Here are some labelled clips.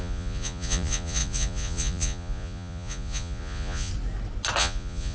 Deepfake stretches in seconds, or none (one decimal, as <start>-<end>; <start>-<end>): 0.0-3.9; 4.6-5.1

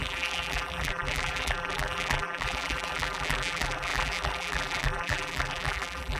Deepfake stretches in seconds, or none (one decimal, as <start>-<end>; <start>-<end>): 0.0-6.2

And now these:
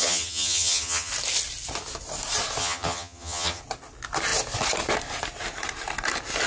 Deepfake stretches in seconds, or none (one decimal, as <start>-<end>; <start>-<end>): 0.0-1.1; 2.6-3.6